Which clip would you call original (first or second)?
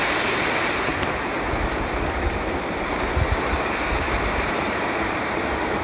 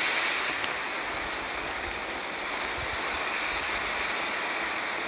second